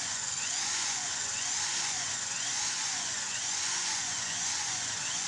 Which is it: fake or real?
fake